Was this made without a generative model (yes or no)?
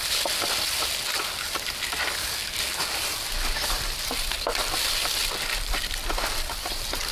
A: yes